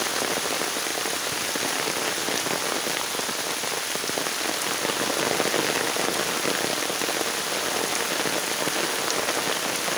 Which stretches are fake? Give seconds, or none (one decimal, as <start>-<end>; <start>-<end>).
none